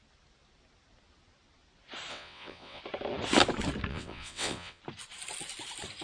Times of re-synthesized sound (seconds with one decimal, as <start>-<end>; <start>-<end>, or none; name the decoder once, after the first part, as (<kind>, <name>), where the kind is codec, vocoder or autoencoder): 2.1-2.8 (vocoder, WaveNeXt); 3.9-4.8